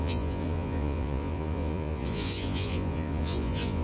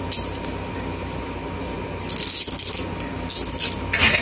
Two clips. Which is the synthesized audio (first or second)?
first